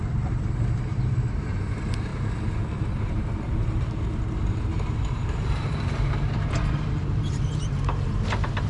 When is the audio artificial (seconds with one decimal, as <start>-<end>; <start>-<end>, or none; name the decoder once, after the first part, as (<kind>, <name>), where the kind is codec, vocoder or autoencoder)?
0.0-2.1 (vocoder, BigVGAN v2); 3.0-8.7